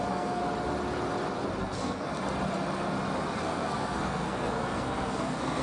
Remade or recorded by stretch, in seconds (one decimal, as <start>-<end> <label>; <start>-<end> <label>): 0.0-0.4 remade; 0.4-1.6 recorded; 1.6-2.1 remade; 2.1-3.3 recorded; 3.3-5.6 remade